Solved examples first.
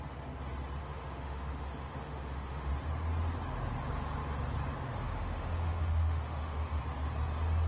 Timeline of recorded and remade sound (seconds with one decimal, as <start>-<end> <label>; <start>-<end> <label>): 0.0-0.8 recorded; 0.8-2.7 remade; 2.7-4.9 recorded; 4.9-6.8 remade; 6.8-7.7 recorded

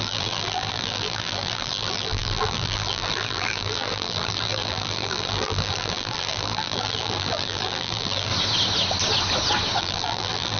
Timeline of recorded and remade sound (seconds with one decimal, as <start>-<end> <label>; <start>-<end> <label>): 0.0-8.3 remade; 8.3-9.8 recorded; 9.8-10.6 remade

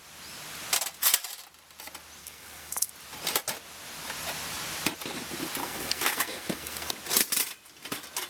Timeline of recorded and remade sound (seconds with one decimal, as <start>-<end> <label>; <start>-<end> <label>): 0.0-2.2 recorded; 2.2-2.9 remade; 2.9-5.6 recorded; 5.6-6.9 remade; 6.9-8.3 recorded